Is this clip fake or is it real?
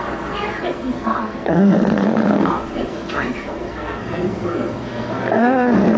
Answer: fake